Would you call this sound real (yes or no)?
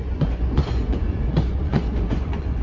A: no